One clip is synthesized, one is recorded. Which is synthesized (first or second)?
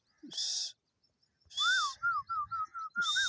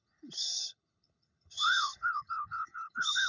second